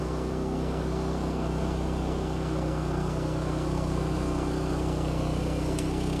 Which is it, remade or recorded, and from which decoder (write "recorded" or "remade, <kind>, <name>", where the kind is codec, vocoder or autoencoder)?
remade, codec, SNAC